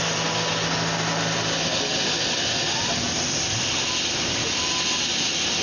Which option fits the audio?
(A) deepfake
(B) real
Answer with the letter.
B